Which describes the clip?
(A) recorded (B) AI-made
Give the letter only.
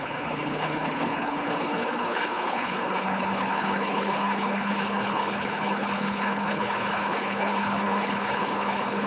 B